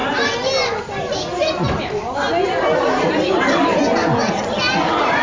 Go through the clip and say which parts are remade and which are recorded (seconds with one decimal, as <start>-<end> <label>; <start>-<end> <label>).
0.0-5.2 recorded